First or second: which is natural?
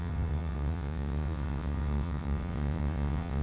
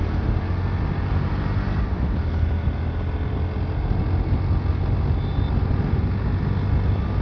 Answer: second